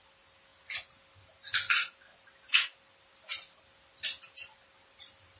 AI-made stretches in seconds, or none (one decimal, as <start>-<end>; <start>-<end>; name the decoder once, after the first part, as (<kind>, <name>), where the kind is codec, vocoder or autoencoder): none